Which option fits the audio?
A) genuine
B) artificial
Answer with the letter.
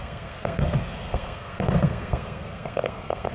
B